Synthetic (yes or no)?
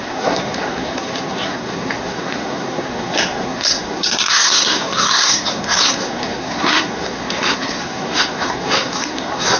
yes